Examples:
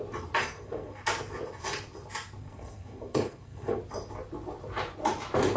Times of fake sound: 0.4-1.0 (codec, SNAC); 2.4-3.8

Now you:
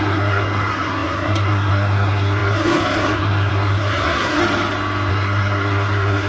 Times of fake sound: 0.0-4.4 (codec, SNAC); 5.1-6.3

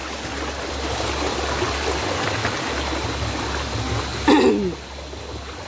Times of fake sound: none

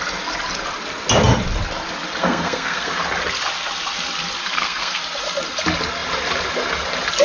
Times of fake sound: 2.2-3.0 (codec, SNAC); 4.4-5.0

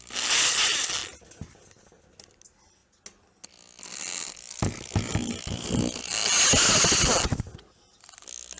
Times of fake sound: none